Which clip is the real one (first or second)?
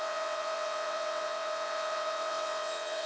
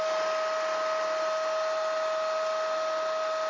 second